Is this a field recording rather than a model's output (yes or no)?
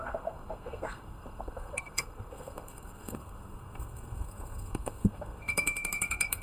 no